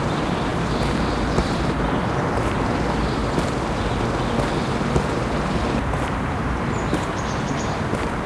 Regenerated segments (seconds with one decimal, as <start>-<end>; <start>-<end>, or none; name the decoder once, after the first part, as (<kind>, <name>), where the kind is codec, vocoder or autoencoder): 0.0-3.2 (vocoder, BigVGAN v2); 5.1-8.3

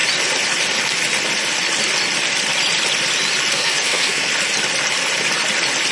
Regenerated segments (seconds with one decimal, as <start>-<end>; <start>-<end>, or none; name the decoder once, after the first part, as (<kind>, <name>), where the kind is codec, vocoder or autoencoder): 3.5-4.3 (codec, SNAC)

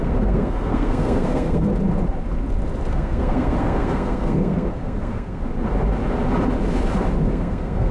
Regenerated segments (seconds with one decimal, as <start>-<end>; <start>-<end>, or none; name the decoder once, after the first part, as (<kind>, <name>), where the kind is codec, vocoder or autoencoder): 0.0-1.7 (codec, SNAC); 2.9-5.4; 7.3-7.9

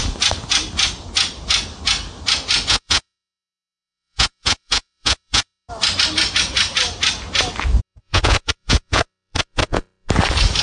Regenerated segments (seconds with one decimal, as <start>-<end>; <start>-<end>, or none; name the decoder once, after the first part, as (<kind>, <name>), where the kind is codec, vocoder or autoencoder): 2.7-5.7 (vocoder, Vocos); 7.8-10.1

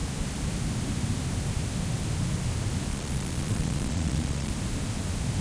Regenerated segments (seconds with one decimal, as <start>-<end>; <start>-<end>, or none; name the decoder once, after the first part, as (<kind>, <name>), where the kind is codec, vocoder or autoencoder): 2.9-4.5 (vocoder, Vocos)

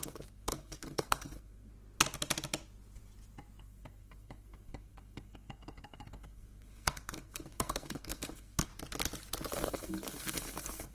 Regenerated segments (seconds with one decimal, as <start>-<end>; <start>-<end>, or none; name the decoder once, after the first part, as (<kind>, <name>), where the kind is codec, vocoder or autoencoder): 0.0-1.7 (codec, SNAC); 3.6-8.7; 9.5-10.9

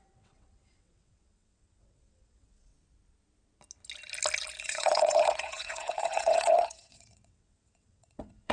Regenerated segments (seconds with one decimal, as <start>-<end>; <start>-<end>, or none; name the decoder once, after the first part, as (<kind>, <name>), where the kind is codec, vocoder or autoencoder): 0.0-2.7 (vocoder, WaveNeXt); 4.6-8.5